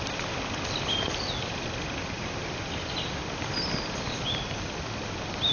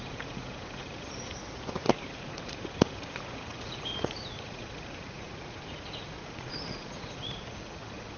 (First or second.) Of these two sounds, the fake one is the second